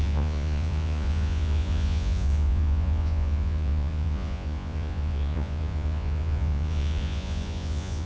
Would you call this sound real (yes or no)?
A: no